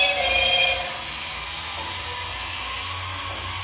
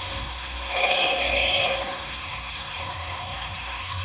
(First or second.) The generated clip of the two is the second